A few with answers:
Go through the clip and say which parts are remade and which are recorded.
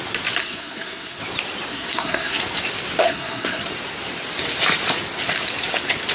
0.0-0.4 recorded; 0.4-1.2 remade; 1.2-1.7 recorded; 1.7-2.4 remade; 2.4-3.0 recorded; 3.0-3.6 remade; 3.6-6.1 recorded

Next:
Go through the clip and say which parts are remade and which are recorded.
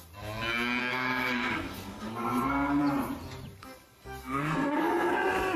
0.0-0.8 recorded; 0.8-2.8 remade; 2.8-4.2 recorded; 4.2-5.1 remade; 5.1-5.6 recorded